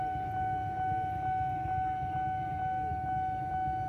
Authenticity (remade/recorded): recorded